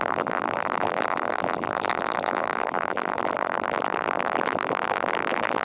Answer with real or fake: fake